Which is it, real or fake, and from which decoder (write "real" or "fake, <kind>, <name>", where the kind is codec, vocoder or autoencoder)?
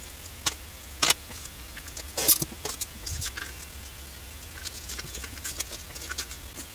real